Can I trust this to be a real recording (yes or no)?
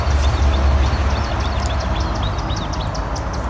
yes